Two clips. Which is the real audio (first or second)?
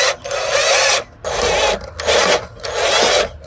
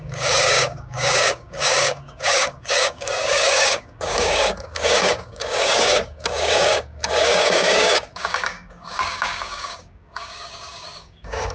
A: first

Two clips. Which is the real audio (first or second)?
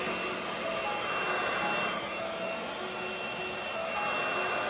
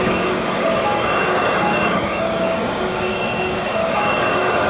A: first